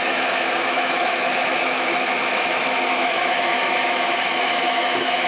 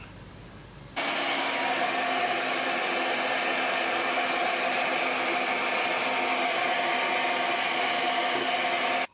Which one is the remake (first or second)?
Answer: first